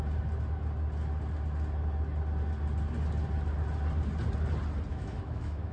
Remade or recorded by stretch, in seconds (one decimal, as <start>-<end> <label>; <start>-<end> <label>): 0.0-4.9 recorded; 4.9-5.7 remade